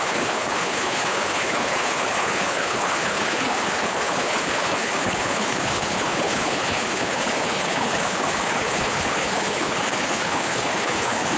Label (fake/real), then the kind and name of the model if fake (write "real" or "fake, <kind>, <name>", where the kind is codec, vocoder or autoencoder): fake, codec, HILCodec